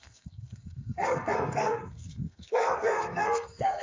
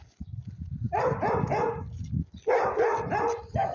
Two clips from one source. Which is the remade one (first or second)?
first